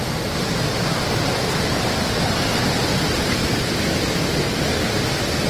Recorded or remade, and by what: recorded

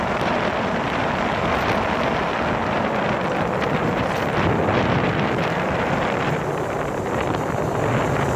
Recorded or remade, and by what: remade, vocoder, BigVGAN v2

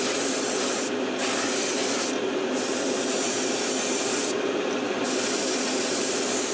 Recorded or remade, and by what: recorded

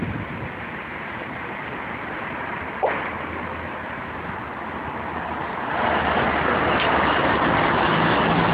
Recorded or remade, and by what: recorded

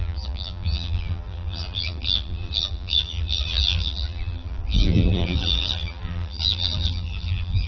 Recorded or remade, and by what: remade, vocoder, BigVGAN v2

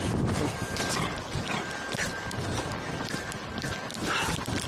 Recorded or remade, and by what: recorded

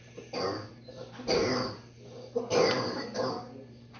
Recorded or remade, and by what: recorded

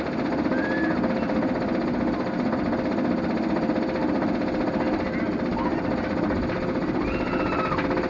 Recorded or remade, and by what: recorded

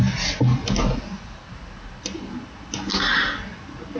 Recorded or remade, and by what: recorded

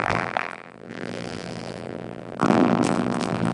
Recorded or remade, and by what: remade, vocoder, BigVGAN v2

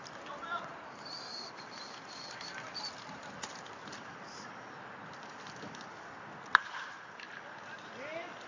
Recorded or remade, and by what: remade, vocoder, BigVGAN v2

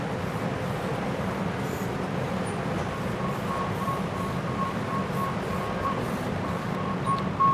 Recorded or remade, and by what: remade, vocoder, BigVGAN v2